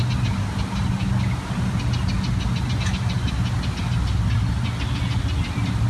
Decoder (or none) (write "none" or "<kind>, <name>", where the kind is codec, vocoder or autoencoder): none